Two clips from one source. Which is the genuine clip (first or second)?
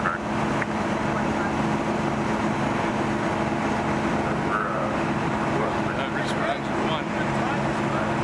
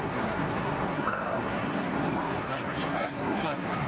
first